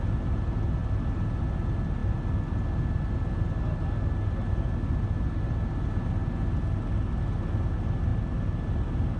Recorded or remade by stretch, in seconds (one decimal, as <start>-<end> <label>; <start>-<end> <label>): 0.0-9.2 recorded